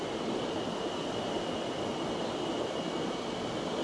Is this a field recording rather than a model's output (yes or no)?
yes